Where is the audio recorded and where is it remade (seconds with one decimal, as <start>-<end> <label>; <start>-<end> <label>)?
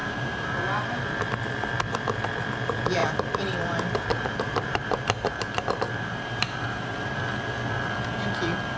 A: 0.0-1.3 remade; 1.3-3.0 recorded; 3.0-7.2 remade; 7.2-8.8 recorded